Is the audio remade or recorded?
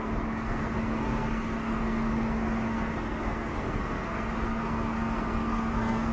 remade